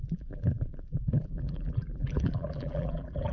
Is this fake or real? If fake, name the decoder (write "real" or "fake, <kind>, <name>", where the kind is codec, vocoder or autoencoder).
fake, vocoder, BigVGAN v2